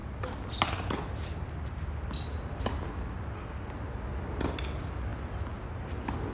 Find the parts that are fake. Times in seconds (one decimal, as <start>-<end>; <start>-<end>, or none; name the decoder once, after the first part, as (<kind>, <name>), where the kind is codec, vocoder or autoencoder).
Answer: none